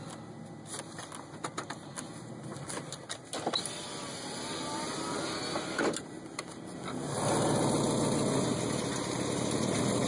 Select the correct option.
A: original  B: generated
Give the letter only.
A